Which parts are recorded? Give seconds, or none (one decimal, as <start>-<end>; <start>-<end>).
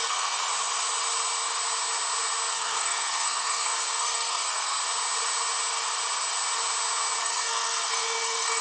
0.4-2.5; 4.8-7.2